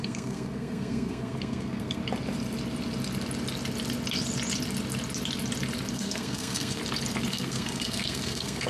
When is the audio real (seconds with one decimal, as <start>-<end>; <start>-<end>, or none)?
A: 2.0-5.9; 6.8-7.3